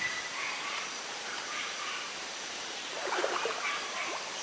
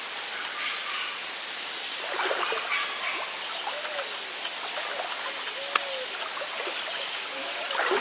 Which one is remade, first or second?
first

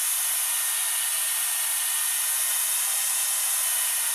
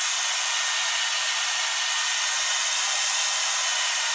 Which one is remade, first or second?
second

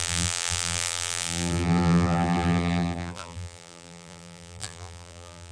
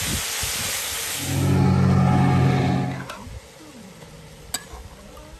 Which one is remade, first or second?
first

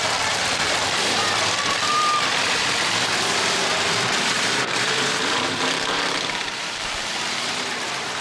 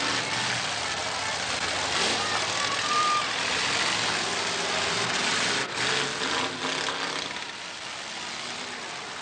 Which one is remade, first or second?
first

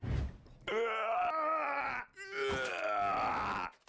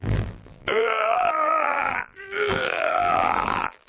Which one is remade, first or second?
second